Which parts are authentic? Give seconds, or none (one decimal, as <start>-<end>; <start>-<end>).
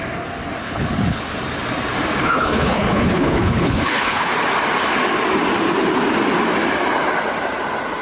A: 0.0-0.6; 1.2-2.2; 4.3-8.0